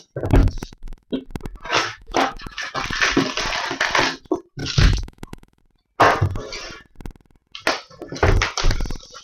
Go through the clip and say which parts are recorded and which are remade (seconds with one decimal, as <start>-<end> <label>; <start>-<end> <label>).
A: 0.0-0.4 recorded; 0.4-1.1 remade; 1.1-1.7 recorded; 1.7-2.7 remade; 2.7-4.6 recorded; 4.6-5.6 remade; 5.6-9.2 recorded